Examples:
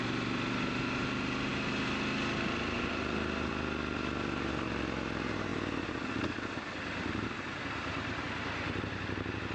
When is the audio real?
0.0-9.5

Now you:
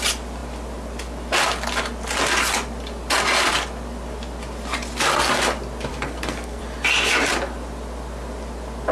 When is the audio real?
0.0-5.9; 6.6-8.9

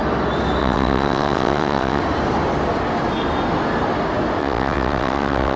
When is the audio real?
0.0-0.6; 2.0-4.4